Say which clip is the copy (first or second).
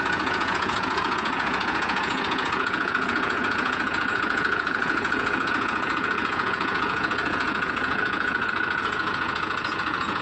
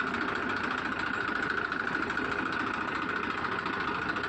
first